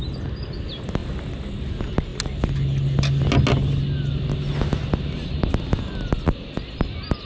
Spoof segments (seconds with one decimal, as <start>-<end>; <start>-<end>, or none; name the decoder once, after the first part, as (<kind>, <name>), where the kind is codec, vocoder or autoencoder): none

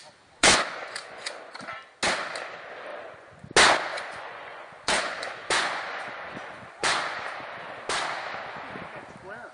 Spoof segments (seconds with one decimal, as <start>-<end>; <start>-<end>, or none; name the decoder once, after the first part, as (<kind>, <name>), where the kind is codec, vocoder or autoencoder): 0.4-1.6 (vocoder, Vocos); 2.9-3.4; 3.9-7.2

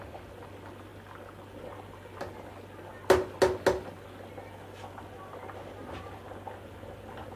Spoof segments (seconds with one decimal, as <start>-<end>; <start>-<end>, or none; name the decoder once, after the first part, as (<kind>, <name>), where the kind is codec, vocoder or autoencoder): none

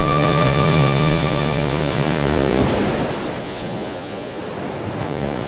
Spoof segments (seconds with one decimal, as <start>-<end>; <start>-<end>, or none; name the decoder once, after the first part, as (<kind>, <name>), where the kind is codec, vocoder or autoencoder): 0.0-2.6 (vocoder, Vocos); 3.4-4.4; 5.0-5.5

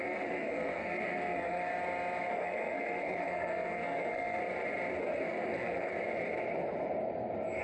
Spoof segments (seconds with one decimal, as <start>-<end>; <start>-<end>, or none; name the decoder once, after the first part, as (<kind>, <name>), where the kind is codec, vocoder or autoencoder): 0.0-1.7 (codec, SNAC); 2.3-4.4; 5.0-5.9

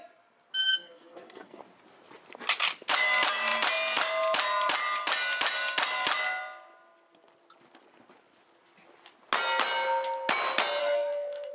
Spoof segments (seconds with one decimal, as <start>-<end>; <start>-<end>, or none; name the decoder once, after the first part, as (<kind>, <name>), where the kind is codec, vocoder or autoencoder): 0.6-1.6 (codec, SNAC); 10.8-11.5

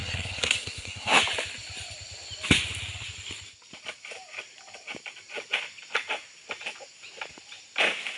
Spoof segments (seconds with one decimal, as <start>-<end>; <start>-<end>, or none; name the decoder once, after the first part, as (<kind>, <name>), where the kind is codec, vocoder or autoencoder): 0.0-1.2 (codec, SNAC)

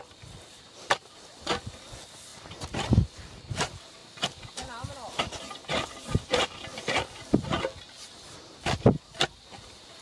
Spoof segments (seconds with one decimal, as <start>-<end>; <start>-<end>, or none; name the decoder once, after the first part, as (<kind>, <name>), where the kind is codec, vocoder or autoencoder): none